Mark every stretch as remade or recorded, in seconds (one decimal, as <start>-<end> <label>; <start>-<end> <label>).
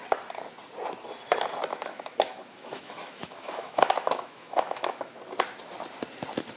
0.0-1.7 recorded; 1.7-5.1 remade; 5.1-6.6 recorded